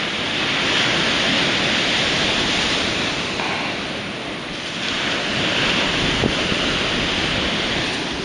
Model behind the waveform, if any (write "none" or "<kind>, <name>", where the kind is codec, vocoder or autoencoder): none